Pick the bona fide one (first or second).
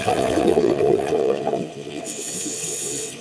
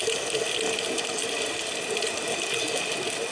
second